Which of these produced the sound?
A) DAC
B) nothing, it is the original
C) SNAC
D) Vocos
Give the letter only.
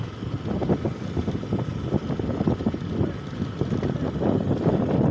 B